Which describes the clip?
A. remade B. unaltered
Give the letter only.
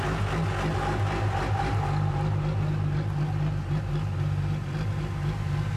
B